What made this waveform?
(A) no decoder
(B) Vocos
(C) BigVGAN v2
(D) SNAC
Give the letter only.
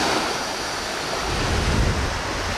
A